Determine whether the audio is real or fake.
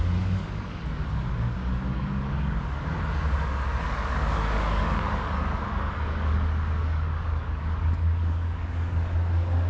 fake